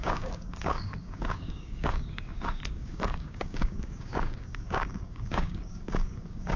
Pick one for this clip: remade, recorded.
remade